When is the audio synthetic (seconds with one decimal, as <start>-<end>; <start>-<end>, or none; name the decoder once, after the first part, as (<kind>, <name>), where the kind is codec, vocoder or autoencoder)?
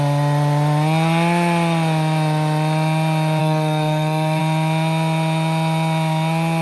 3.4-4.4 (codec, SNAC)